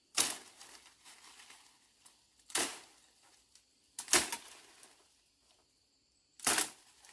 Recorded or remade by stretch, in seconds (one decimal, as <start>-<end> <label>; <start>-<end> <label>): 0.0-7.1 recorded